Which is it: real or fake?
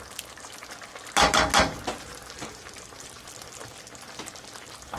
real